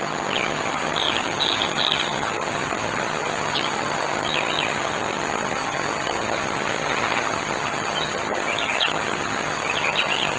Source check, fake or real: fake